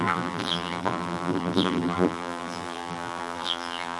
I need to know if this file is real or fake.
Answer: fake